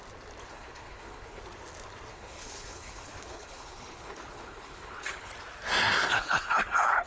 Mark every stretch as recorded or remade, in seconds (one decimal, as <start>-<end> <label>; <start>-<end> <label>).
0.0-0.5 recorded; 0.5-1.4 remade; 1.4-2.1 recorded; 2.1-5.3 remade; 5.3-6.1 recorded; 6.1-7.1 remade